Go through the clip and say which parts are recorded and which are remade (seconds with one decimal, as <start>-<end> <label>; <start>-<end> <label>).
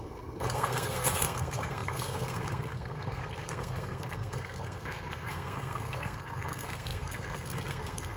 0.0-8.2 remade